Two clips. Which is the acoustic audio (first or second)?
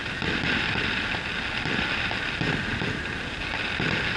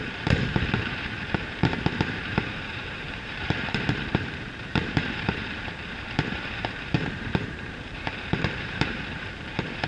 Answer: first